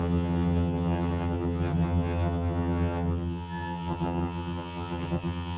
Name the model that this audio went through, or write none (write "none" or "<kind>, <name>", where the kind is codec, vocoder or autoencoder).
vocoder, HiFi-GAN